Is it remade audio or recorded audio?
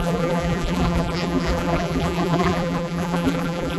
remade